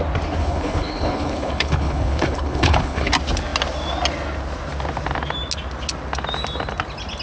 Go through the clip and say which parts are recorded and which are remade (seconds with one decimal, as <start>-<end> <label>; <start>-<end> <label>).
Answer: 0.0-0.4 recorded; 0.4-3.1 remade; 3.1-7.2 recorded